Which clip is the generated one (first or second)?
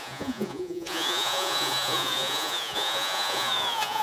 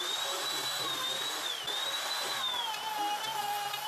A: first